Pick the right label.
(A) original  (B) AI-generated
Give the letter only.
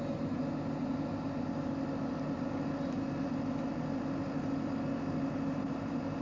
A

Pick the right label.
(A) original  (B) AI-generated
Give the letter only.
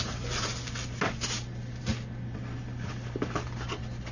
A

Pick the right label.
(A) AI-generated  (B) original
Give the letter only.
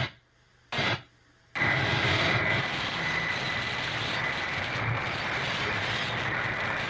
B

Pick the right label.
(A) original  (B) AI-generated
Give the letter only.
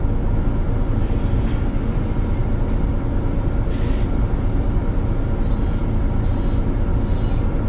A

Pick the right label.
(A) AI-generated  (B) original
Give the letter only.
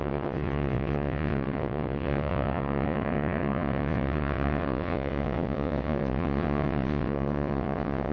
A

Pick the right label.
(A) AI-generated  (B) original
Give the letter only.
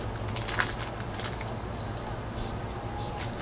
B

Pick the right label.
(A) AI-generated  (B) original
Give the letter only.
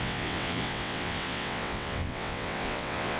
A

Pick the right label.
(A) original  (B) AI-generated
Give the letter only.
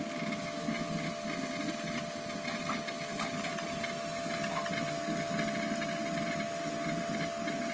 A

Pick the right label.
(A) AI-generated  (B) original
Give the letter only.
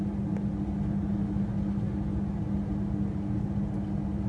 B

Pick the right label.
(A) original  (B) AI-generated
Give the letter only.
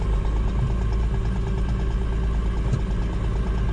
A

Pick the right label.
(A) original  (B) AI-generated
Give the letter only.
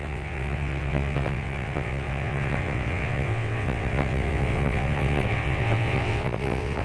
B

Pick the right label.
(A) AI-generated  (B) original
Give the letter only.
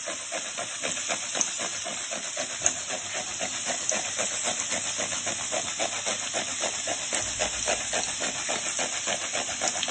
B